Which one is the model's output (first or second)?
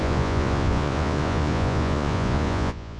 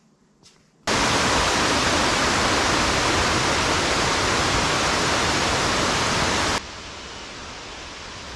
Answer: first